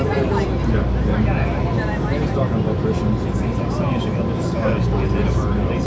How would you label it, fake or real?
real